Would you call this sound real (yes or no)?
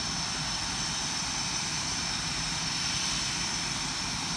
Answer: yes